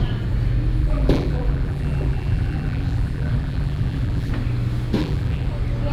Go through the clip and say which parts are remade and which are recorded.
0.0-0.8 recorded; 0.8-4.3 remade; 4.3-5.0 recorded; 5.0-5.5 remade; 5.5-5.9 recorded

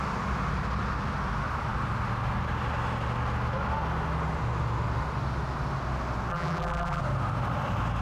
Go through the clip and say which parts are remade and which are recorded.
0.0-6.3 recorded; 6.3-7.0 remade; 7.0-8.0 recorded

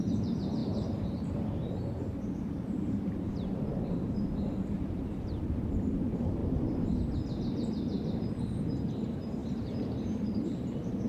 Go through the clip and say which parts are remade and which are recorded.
0.0-6.4 remade; 6.4-8.3 recorded; 8.3-11.1 remade

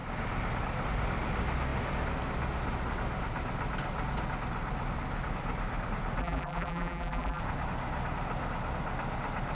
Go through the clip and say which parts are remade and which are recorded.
0.0-6.2 recorded; 6.2-7.4 remade; 7.4-9.5 recorded